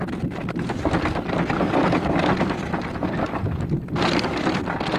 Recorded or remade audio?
recorded